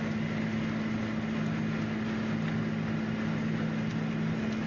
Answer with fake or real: real